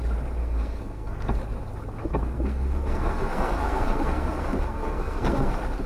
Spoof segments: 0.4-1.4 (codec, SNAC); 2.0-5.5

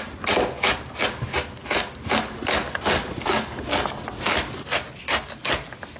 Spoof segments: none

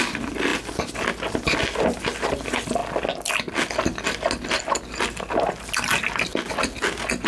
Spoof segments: none

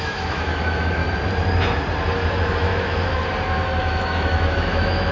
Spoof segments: 0.0-1.0 (autoencoder, DAC-VAE); 2.5-3.2; 3.8-5.1